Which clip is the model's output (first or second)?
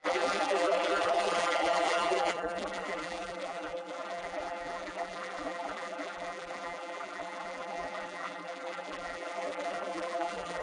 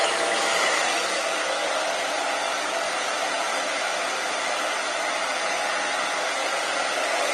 first